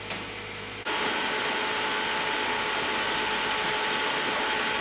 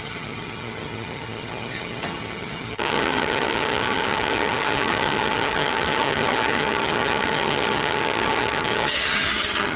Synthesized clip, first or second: second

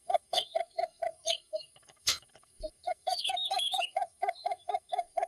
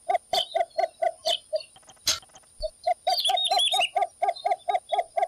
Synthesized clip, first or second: first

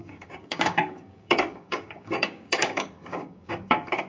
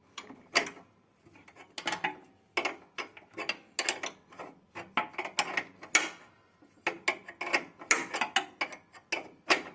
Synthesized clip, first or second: first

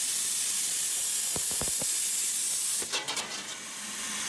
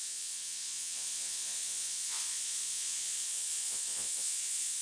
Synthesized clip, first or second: second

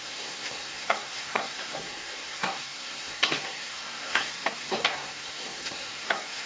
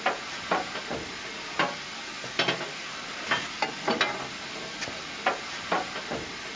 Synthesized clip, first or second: first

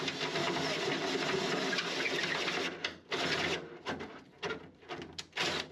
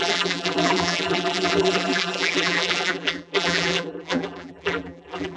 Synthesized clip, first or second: second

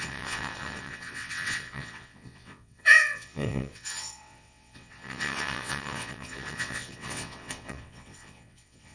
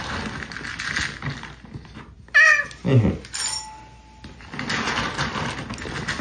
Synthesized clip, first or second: first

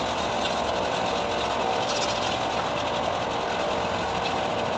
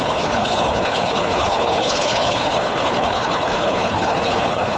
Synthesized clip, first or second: second